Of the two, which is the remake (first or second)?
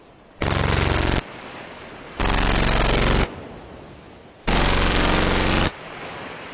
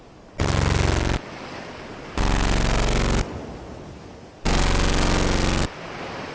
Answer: first